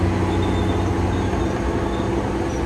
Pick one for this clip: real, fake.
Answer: real